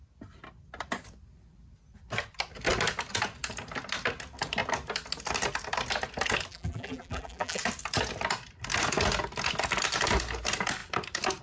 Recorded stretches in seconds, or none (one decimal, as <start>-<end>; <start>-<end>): 0.0-6.5; 7.6-11.4